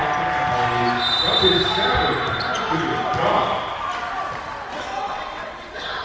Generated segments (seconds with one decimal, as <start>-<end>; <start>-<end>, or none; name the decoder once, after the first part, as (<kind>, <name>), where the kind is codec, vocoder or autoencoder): 5.0-6.0 (vocoder, WaveNeXt)